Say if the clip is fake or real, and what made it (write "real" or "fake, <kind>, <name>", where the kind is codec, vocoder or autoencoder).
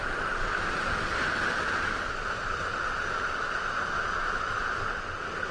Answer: real